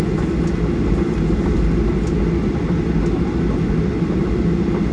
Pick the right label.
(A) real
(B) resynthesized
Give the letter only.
A